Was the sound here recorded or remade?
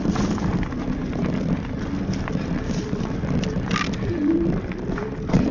recorded